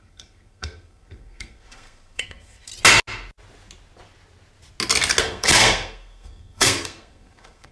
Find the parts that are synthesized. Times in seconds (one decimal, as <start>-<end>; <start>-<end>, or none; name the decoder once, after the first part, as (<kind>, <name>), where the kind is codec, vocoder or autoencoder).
0.0-2.7 (codec, SNAC); 5.2-7.7